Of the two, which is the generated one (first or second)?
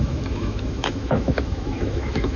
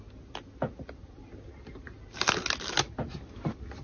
first